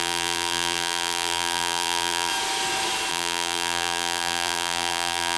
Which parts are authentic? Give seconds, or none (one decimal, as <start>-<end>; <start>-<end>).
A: 2.3-3.1